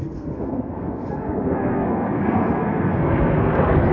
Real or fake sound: fake